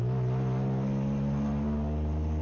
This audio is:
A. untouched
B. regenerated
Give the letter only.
A